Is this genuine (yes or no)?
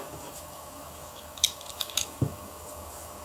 no